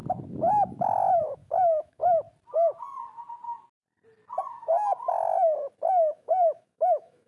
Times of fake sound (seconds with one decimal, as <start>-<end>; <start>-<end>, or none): 1.2-2.0; 5.9-7.3